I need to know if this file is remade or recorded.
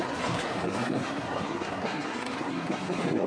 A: remade